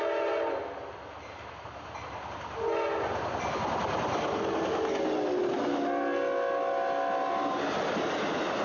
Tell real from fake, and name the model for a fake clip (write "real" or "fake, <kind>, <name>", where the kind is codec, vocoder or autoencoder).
real